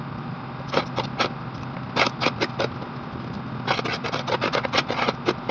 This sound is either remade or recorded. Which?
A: recorded